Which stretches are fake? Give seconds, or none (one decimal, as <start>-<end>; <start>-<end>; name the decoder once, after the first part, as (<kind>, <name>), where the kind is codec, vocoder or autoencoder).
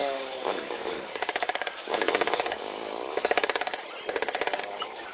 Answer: 0.0-3.7 (codec, DAC); 4.6-5.1